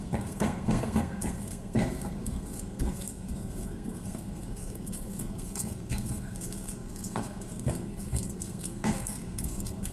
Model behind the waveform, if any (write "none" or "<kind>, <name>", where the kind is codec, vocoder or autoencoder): codec, SNAC